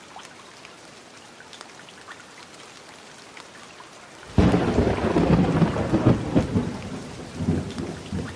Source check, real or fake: real